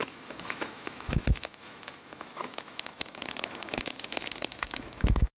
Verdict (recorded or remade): remade